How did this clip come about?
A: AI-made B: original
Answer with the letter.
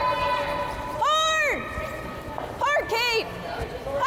B